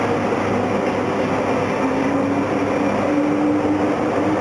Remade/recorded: recorded